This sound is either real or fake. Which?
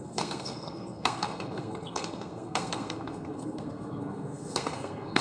fake